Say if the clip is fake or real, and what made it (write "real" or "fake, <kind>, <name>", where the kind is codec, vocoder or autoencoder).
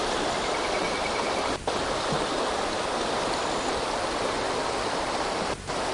real